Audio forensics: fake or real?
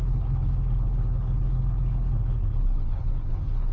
fake